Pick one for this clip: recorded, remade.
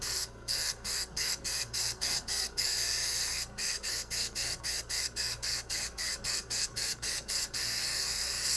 remade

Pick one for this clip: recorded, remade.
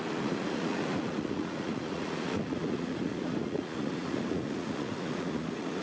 remade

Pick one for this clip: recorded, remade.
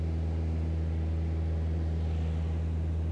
recorded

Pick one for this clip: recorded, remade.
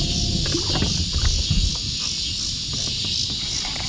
recorded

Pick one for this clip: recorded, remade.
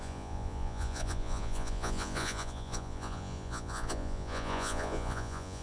remade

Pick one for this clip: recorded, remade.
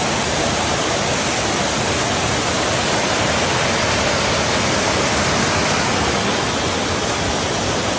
recorded